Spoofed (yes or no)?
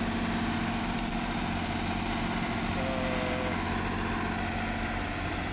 no